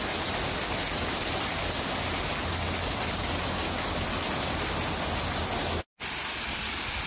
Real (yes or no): yes